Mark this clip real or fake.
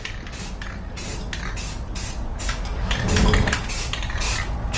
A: real